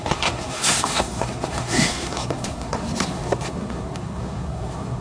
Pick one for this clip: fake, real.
fake